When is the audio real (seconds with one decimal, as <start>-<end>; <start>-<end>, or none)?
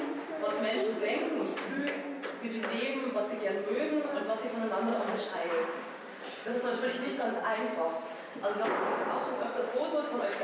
0.0-1.5; 2.3-4.9; 5.5-10.4